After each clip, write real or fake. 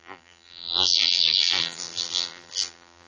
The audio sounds fake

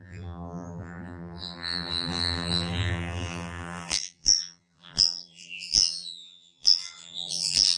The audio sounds fake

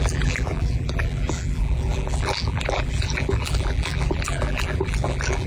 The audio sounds fake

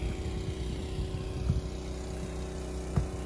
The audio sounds real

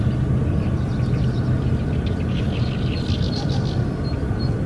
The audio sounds fake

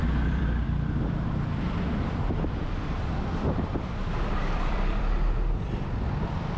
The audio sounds fake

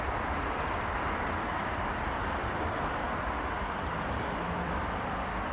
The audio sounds fake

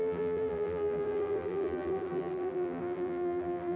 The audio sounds fake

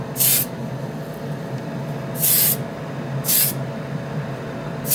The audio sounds real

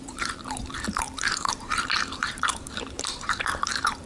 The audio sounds fake